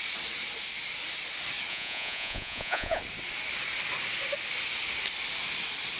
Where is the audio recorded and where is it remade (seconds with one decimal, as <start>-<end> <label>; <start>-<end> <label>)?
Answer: 0.0-1.7 recorded; 1.7-3.0 remade; 3.0-6.0 recorded